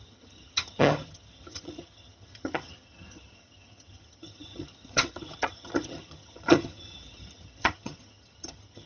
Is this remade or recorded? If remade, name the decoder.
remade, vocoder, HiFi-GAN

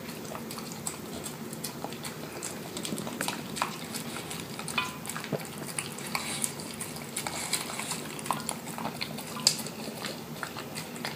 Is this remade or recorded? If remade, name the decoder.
recorded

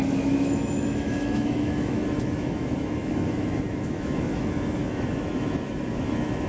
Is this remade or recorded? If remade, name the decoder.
remade, autoencoder, DAC-VAE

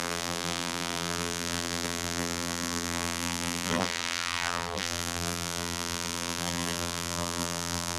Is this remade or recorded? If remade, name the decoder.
remade, vocoder, BigVGAN v2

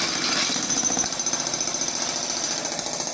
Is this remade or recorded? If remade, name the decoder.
recorded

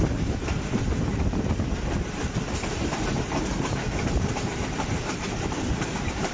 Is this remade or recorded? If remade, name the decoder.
remade, vocoder, BigVGAN v2